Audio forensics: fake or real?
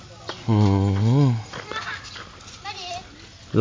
real